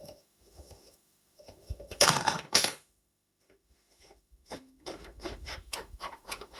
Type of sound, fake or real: fake